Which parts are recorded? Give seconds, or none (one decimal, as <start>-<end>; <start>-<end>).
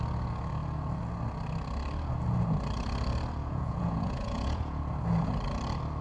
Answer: 0.0-3.4; 4.8-6.0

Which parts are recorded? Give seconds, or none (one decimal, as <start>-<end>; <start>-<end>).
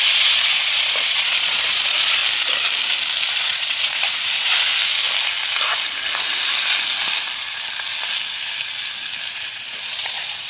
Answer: 2.2-3.3; 4.7-9.3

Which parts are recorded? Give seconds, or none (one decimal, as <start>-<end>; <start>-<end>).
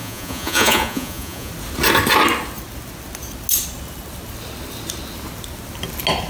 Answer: 1.5-6.3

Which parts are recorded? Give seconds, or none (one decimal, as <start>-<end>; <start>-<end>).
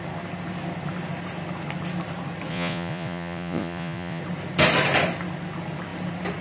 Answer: 0.0-2.5; 4.2-6.4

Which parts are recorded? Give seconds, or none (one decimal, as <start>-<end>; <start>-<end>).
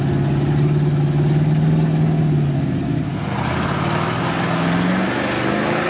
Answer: 0.0-5.9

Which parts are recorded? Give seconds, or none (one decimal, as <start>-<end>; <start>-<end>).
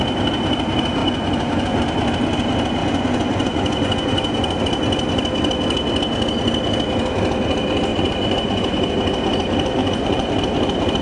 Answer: 0.0-1.0; 1.8-2.8; 4.6-7.9; 8.9-9.8; 10.4-11.0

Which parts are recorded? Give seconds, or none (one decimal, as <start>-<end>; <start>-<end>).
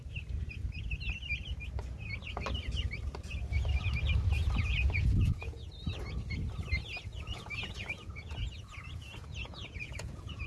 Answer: 0.0-4.7; 5.7-7.1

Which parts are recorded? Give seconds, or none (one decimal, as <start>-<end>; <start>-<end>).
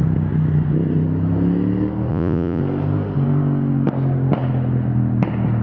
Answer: 0.0-2.1; 2.6-5.6